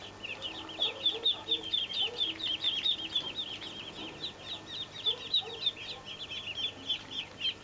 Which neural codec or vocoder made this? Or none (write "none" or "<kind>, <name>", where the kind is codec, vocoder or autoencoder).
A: none